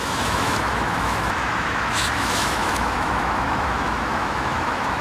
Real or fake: fake